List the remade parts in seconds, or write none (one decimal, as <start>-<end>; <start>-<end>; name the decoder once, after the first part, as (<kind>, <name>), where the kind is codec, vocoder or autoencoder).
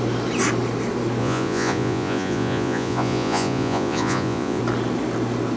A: 1.2-4.6 (vocoder, Vocos)